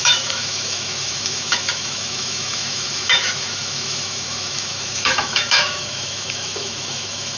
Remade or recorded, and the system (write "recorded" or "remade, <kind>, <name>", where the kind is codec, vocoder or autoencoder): remade, autoencoder, DAC-VAE